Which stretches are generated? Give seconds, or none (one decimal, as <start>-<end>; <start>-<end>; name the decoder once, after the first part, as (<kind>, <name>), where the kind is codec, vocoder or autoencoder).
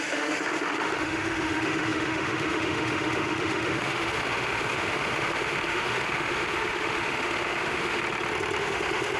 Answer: 0.0-8.0 (autoencoder, DAC-VAE); 8.6-9.2